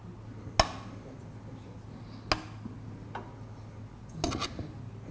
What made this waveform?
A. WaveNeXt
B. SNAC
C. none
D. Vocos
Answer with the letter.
C